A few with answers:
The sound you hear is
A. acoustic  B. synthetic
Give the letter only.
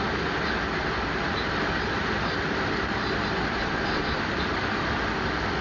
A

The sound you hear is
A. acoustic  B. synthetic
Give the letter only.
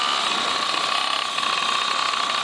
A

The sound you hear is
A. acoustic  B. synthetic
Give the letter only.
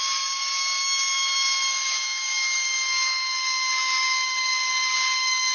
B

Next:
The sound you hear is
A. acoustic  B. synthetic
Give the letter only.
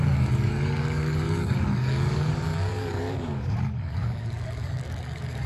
B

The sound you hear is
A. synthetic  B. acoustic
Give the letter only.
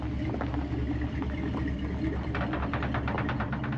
B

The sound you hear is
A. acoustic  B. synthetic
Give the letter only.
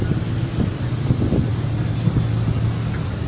A